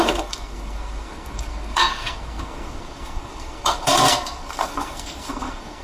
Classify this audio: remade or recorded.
remade